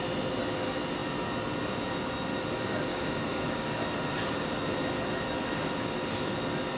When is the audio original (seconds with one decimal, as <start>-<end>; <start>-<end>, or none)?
0.0-2.9; 3.8-6.8